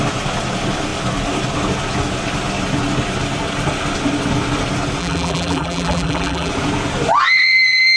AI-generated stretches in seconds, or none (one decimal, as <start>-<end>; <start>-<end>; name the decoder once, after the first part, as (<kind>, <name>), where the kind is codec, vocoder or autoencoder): 5.0-6.5 (vocoder, BigVGAN v2)